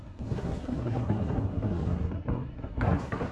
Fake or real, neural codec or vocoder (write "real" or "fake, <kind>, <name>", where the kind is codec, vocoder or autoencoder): fake, codec, SNAC